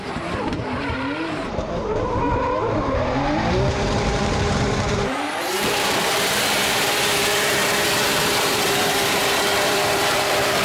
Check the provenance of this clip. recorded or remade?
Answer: remade